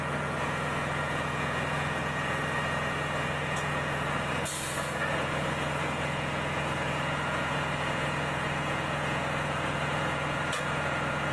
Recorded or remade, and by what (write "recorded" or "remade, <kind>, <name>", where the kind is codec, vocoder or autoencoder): remade, vocoder, Vocos